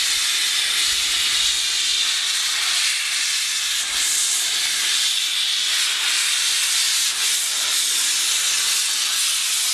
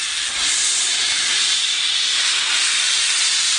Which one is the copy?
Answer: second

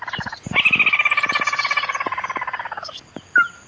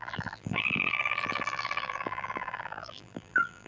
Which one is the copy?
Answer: second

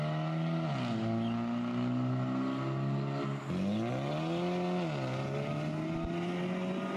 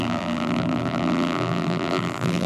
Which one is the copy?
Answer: second